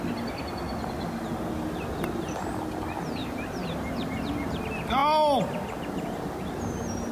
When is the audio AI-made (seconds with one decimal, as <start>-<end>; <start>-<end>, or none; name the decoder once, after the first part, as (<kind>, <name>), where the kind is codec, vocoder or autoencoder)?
3.2-4.6 (vocoder, BigVGAN v2)